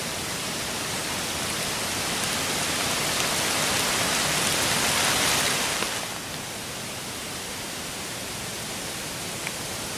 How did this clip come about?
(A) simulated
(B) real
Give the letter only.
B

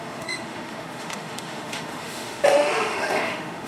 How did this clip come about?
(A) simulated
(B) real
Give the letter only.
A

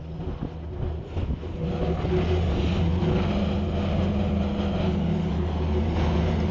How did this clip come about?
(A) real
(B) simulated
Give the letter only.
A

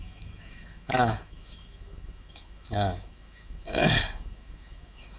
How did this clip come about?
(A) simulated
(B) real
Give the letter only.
A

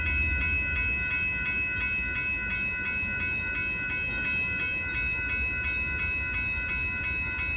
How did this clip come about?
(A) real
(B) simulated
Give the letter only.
A